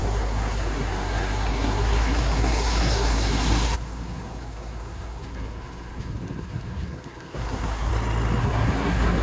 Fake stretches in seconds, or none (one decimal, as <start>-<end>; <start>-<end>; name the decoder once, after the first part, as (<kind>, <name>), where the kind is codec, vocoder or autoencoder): 0.0-7.9 (codec, SNAC); 8.4-9.2